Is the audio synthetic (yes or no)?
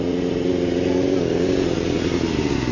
no